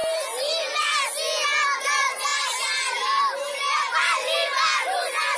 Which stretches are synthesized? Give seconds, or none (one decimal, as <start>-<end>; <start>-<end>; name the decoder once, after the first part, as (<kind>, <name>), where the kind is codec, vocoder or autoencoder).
0.0-1.1 (vocoder, BigVGAN v2); 2.3-3.2